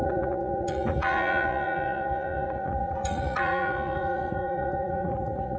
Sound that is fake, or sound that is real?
fake